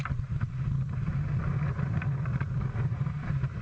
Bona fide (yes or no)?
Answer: yes